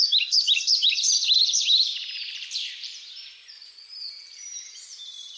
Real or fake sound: fake